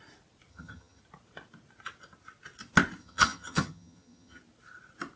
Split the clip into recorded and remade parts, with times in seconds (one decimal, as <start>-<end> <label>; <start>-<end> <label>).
0.0-0.5 recorded; 0.5-1.0 remade; 1.0-3.0 recorded; 3.0-4.4 remade; 4.4-5.2 recorded